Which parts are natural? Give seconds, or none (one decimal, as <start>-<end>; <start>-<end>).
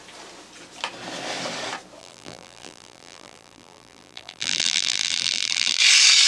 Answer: 0.0-2.0; 5.8-6.3